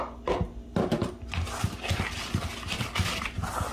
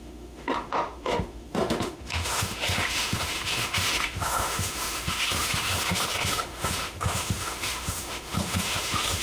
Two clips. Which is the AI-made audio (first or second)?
second